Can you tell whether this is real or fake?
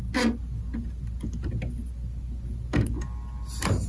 real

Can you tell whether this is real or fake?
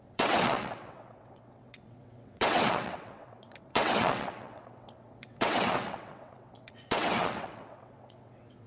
fake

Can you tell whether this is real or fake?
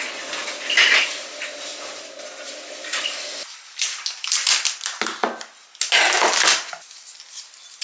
real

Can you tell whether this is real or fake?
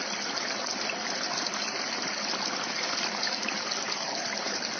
real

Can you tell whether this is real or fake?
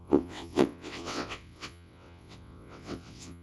fake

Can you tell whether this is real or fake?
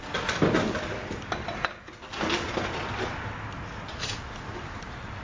real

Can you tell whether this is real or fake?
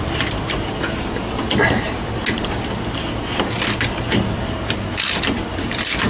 real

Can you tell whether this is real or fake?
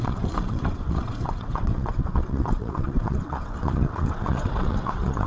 fake